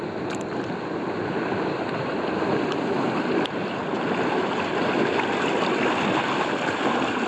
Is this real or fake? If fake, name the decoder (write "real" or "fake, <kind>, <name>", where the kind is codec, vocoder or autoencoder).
real